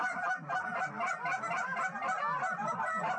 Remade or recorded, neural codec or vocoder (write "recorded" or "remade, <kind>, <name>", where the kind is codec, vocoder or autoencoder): recorded